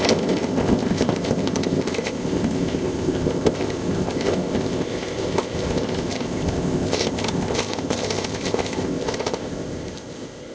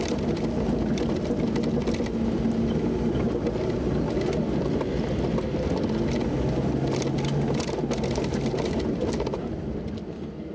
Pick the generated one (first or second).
first